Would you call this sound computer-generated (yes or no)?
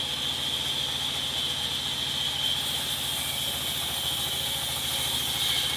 no